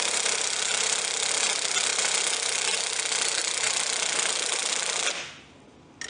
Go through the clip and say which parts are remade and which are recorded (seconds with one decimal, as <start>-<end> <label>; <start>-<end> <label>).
0.0-6.1 recorded